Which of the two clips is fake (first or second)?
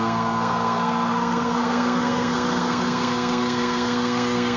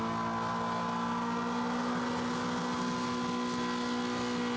first